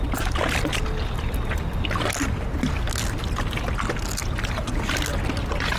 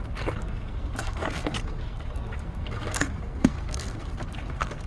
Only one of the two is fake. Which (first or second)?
second